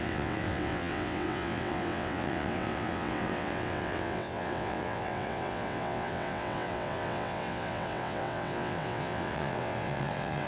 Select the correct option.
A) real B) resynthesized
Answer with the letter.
B